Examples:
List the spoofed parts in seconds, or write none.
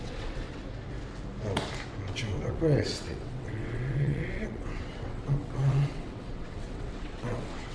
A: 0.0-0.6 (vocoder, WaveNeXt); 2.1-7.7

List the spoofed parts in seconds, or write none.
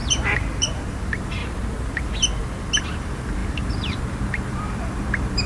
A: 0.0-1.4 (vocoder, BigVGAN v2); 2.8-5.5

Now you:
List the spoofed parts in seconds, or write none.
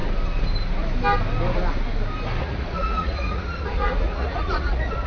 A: 2.4-5.1 (vocoder, Vocos)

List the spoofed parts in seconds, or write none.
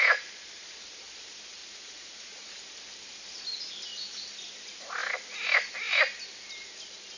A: 1.6-2.5 (vocoder, Vocos)